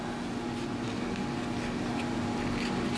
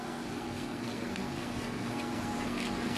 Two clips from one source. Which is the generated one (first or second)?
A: second